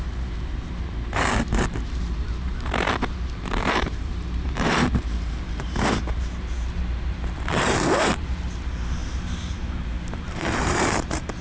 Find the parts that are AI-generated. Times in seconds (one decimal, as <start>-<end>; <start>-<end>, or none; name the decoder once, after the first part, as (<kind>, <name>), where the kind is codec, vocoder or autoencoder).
0.0-11.4 (vocoder, BigVGAN v2)